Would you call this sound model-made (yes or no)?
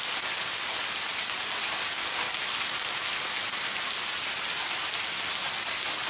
no